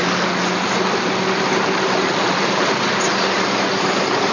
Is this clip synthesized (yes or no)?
no